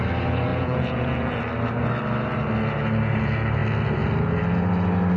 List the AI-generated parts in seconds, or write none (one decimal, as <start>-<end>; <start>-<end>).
0.5-1.4